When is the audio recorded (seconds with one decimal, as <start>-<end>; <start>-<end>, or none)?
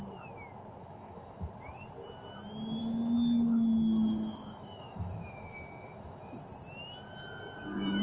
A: 0.0-0.8; 1.5-2.8; 6.4-8.0